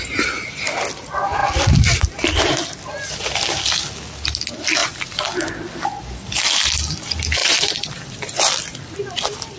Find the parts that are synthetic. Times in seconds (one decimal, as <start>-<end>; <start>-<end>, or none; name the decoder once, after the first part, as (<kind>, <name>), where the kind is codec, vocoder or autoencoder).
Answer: 1.4-2.5 (vocoder, BigVGAN v2); 4.8-6.5; 7.4-9.0